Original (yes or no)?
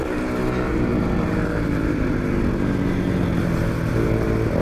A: yes